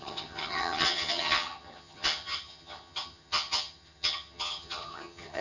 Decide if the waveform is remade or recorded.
remade